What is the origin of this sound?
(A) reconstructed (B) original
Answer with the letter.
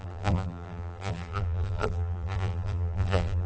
A